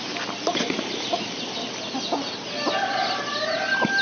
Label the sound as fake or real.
real